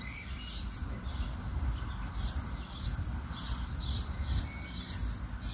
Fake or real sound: real